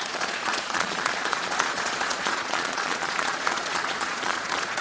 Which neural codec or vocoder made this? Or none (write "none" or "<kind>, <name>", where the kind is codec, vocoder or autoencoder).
vocoder, Vocos